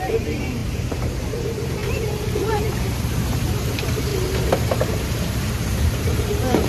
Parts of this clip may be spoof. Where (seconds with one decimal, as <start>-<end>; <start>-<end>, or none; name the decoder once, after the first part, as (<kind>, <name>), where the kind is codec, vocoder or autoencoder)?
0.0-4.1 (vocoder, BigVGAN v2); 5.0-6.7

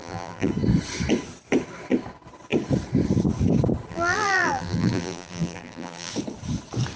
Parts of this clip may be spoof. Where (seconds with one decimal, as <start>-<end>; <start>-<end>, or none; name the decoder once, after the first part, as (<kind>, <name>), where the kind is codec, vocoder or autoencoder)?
0.0-0.5 (vocoder, BigVGAN v2); 3.9-6.1

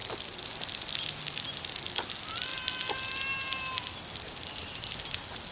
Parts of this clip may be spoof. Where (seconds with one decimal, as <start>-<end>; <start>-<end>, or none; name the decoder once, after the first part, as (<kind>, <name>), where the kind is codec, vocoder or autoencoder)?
none